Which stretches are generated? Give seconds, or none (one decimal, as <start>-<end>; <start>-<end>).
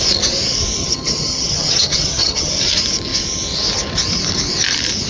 0.8-2.5